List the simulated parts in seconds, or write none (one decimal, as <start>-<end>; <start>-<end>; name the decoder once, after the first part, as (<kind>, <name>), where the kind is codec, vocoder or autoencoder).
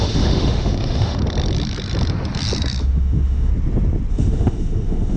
0.0-1.2 (autoencoder, DAC-VAE); 2.8-3.5; 4.1-5.2